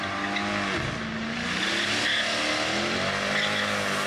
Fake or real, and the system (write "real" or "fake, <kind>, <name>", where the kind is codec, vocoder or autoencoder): real